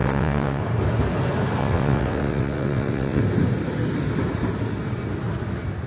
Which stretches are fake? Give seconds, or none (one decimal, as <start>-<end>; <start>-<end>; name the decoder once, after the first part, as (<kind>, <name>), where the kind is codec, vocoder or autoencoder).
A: 0.0-0.6 (vocoder, WaveNeXt); 1.6-3.2